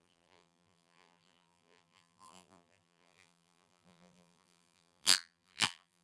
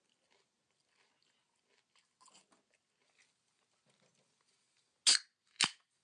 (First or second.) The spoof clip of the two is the first